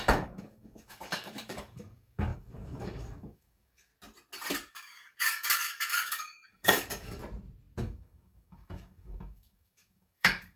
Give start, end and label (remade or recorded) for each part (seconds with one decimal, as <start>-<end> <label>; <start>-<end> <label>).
0.0-3.9 remade; 3.9-4.7 recorded; 4.7-7.2 remade; 7.2-7.8 recorded; 7.8-10.6 remade

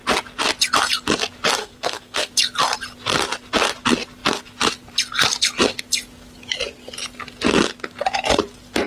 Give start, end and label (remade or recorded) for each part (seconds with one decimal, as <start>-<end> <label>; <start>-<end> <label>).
0.0-1.6 recorded; 1.6-2.3 remade; 2.3-8.9 recorded